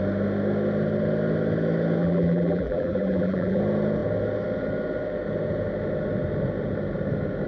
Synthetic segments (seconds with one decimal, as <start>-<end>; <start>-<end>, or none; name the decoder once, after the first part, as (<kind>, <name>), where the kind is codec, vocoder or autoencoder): 2.0-3.6 (vocoder, BigVGAN v2)